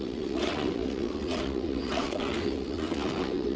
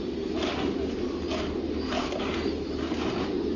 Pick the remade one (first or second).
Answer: first